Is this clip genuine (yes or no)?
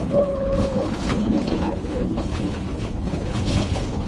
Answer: no